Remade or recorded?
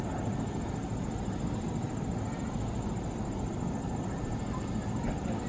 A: recorded